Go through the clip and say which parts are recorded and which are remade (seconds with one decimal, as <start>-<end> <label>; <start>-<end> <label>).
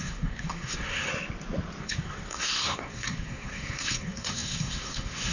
0.0-1.1 remade; 1.1-1.8 recorded; 1.8-5.3 remade